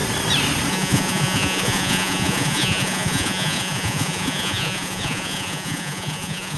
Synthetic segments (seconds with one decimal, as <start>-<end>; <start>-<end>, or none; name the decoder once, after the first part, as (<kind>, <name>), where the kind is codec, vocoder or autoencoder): 0.7-6.6 (vocoder, Vocos)